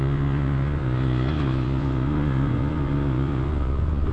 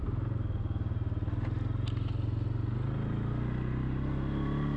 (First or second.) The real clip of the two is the second